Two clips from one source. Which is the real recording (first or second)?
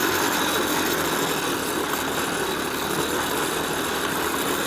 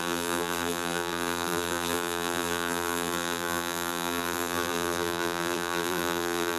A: first